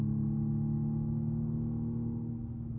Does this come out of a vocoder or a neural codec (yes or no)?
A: no